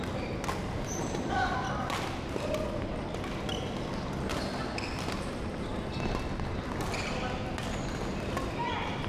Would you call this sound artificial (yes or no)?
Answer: no